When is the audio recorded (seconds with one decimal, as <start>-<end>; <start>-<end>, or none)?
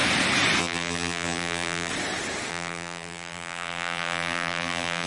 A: 0.0-0.6; 1.9-2.5